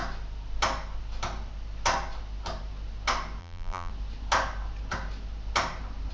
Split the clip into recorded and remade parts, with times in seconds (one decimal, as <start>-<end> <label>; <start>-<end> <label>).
0.0-3.4 recorded; 3.4-3.9 remade; 3.9-6.1 recorded